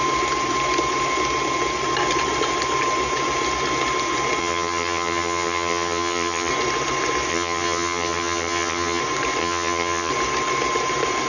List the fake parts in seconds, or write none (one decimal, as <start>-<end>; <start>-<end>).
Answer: 4.4-6.5; 7.3-9.0; 9.4-10.1